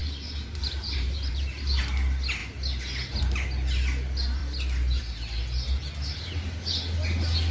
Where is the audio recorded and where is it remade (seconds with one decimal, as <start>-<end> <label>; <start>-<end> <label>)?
0.0-1.8 remade; 1.8-7.5 recorded

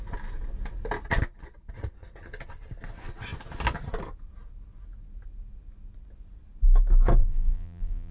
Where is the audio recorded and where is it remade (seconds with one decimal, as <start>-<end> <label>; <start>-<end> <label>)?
0.0-7.2 recorded; 7.2-8.1 remade

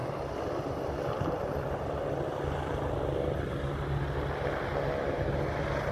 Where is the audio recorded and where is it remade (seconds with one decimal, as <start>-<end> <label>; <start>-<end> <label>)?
0.0-3.5 remade; 3.5-5.9 recorded

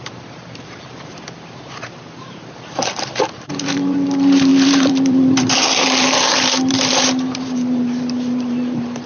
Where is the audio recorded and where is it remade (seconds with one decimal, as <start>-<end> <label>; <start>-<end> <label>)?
0.0-9.1 remade